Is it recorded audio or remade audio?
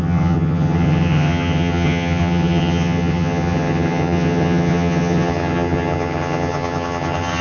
remade